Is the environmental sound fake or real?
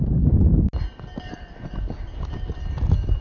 real